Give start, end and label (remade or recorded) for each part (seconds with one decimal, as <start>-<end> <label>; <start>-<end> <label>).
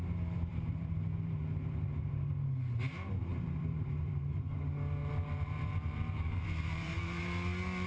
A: 0.0-0.5 recorded; 0.5-2.3 remade; 2.3-3.3 recorded; 3.3-4.4 remade; 4.4-5.0 recorded; 5.0-7.2 remade; 7.2-7.9 recorded